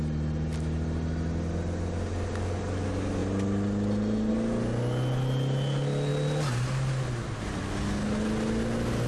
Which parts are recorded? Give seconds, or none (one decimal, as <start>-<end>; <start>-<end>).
0.0-9.1